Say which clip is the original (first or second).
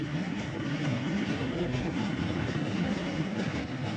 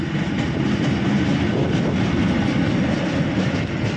second